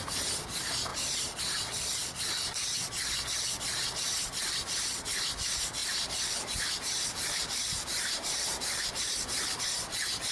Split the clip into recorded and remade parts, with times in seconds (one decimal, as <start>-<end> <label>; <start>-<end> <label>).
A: 0.0-0.9 recorded; 0.9-1.4 remade; 1.4-5.8 recorded; 5.8-9.6 remade; 9.6-10.3 recorded